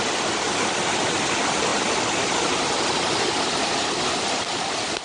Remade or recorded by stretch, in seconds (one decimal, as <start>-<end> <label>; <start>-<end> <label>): 0.0-5.0 recorded